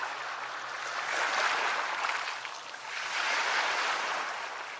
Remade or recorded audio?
recorded